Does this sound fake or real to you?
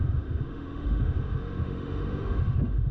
fake